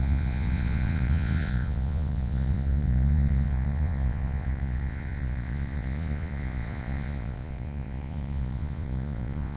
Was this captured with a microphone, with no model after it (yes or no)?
no